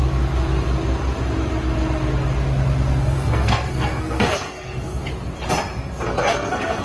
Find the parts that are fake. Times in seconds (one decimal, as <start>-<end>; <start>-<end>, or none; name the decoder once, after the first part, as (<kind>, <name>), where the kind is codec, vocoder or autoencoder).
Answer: 3.0-5.0 (codec, SNAC); 6.2-6.8